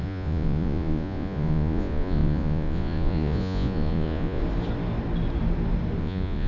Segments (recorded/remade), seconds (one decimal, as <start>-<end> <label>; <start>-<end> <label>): 0.0-4.4 remade; 4.4-6.0 recorded; 6.0-6.5 remade